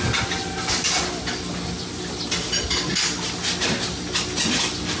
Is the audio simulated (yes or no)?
no